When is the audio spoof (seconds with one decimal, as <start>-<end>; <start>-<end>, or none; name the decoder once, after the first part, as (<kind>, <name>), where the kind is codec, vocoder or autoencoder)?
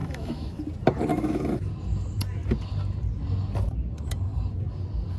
0.0-0.6 (autoencoder, DAC-VAE); 1.1-1.7